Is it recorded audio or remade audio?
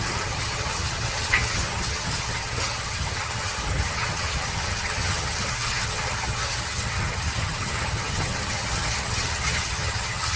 remade